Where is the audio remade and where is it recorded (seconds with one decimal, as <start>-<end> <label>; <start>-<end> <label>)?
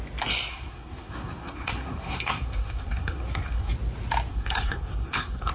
0.0-0.5 recorded; 0.5-3.7 remade; 3.7-4.3 recorded; 4.3-5.5 remade